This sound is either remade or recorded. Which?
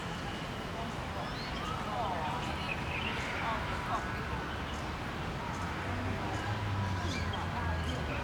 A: recorded